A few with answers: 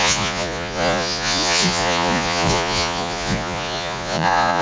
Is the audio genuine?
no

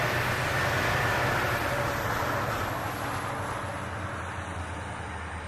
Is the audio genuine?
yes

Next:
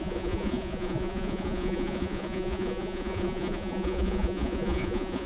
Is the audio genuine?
no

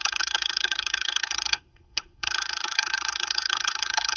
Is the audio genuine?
no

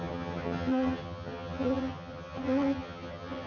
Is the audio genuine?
no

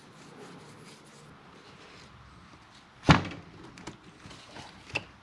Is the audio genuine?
yes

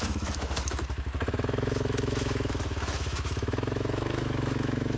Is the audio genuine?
no